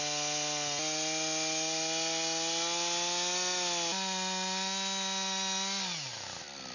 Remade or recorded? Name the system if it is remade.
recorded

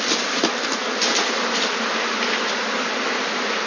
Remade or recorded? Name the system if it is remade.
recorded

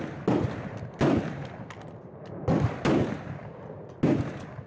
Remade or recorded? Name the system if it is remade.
recorded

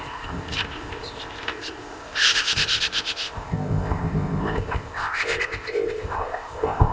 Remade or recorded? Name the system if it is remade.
remade, codec, ZipCodec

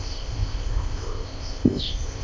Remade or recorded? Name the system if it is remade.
remade, codec, ZipCodec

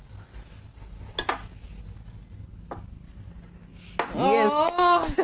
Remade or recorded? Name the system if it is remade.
recorded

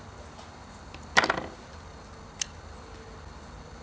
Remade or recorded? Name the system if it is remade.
recorded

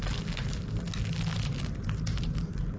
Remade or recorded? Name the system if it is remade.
recorded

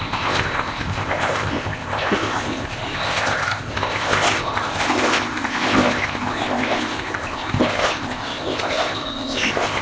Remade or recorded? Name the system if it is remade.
remade, codec, ZipCodec